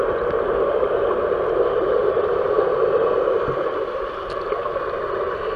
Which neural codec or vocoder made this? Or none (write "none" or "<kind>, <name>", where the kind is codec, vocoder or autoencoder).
none